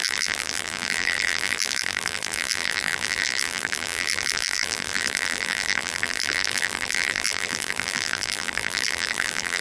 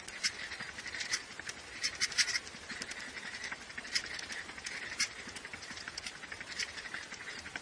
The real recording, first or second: second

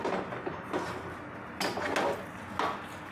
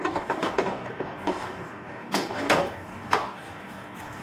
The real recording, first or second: first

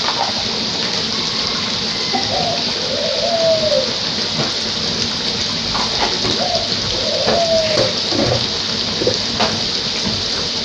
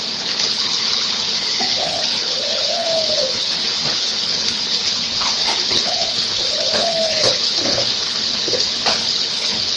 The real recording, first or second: first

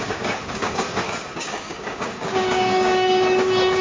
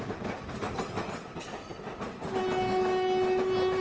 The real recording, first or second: second